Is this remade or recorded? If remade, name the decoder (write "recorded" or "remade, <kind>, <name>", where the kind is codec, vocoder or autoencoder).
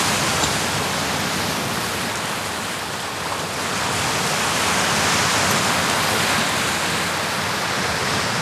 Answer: recorded